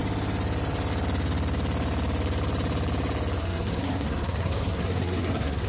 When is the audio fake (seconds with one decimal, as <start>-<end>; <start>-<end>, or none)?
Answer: 3.4-5.7